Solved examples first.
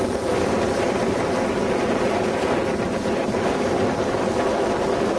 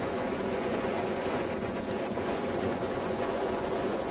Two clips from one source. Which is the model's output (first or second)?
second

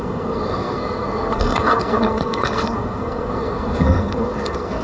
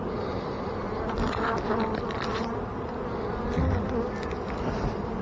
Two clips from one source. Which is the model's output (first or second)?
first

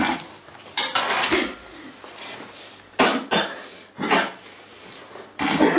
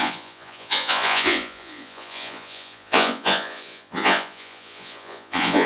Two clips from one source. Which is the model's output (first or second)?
second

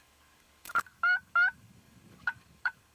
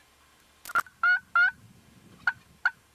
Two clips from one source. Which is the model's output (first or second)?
first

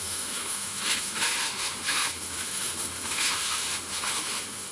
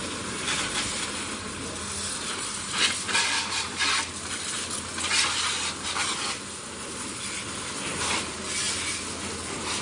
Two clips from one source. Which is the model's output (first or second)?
first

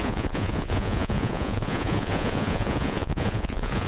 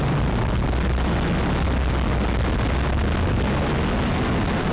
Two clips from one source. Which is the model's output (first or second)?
first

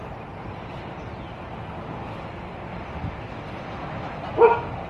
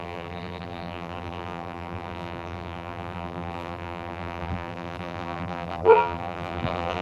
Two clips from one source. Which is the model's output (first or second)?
second